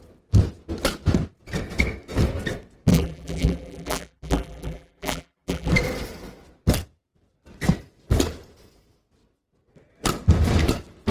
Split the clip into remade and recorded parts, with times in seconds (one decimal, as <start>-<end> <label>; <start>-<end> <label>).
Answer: 0.0-2.9 recorded; 2.9-5.7 remade; 5.7-11.1 recorded